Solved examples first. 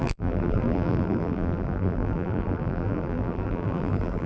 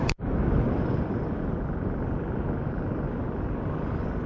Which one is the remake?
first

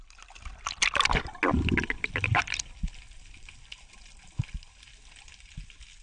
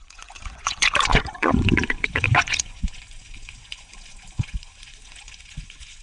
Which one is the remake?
second